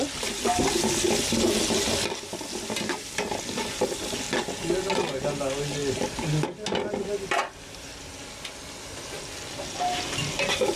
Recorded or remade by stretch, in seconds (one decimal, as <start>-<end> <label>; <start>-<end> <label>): 0.0-10.8 recorded